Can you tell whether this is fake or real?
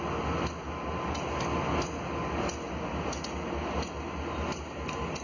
real